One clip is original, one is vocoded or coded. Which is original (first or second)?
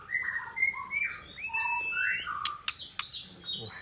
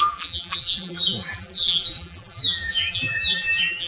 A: first